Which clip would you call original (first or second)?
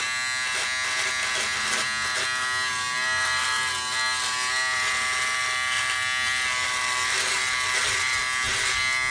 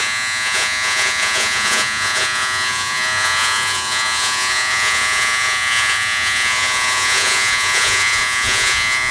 first